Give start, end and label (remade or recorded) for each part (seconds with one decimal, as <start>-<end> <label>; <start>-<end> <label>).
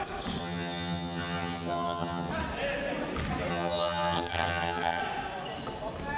0.0-0.4 recorded; 0.4-2.3 remade; 2.3-3.5 recorded; 3.5-5.0 remade; 5.0-6.2 recorded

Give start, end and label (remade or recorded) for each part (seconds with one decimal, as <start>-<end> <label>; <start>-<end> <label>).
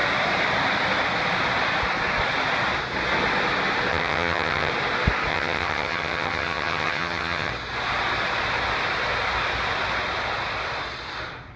0.0-3.9 recorded; 3.9-4.7 remade; 4.7-5.3 recorded; 5.3-7.5 remade; 7.5-11.6 recorded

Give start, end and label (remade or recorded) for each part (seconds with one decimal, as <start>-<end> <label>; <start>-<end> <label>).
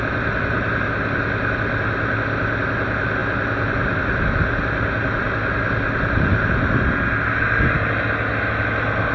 0.0-9.1 recorded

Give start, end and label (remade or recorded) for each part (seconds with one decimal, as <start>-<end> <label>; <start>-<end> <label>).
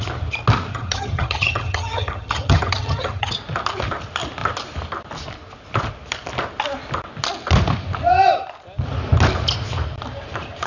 0.0-0.7 recorded; 0.7-3.3 remade; 3.3-10.7 recorded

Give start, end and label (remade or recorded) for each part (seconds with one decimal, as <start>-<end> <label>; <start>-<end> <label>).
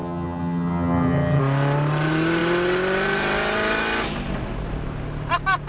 0.0-1.4 remade; 1.4-5.7 recorded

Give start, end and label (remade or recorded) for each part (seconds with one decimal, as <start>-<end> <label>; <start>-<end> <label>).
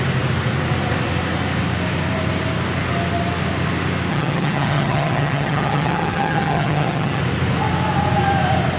0.0-4.1 recorded; 4.1-7.2 remade; 7.2-8.8 recorded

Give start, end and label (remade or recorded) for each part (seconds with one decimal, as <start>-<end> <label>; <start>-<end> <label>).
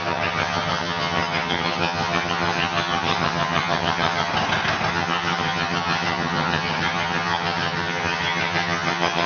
0.0-4.3 remade; 4.3-4.9 recorded; 4.9-9.3 remade